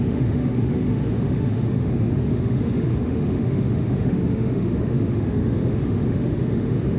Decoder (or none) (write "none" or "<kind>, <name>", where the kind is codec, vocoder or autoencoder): autoencoder, DAC-VAE